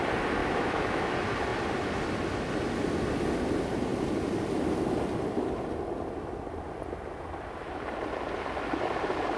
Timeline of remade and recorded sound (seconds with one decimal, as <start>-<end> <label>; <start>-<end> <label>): 0.0-0.4 recorded; 0.4-1.1 remade; 1.1-9.4 recorded